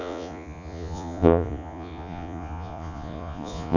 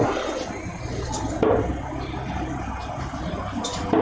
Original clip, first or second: second